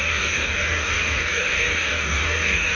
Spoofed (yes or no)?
yes